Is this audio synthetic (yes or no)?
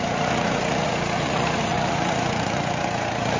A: yes